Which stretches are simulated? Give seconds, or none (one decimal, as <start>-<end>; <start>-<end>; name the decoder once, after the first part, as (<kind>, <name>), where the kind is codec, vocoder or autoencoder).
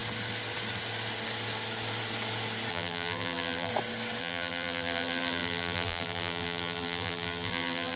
2.7-3.7 (vocoder, BigVGAN v2); 4.2-8.0